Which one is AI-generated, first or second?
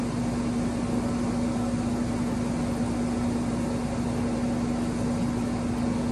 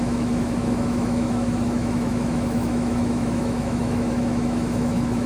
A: second